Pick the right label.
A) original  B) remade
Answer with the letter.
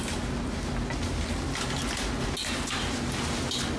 A